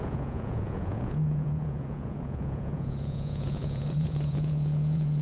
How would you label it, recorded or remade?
remade